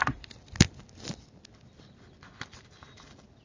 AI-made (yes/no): no